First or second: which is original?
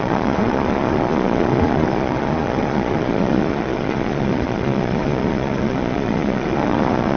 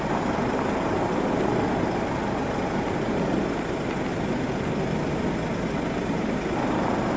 second